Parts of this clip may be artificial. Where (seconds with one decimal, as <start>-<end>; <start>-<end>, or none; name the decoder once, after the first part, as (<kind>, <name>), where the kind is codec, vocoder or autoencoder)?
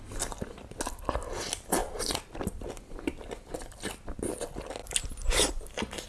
1.8-3.9 (vocoder, BigVGAN v2)